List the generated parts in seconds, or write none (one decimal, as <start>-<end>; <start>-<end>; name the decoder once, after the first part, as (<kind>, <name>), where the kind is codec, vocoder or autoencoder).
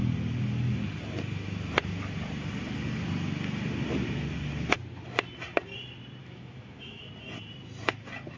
6.2-7.1 (autoencoder, DAC-VAE)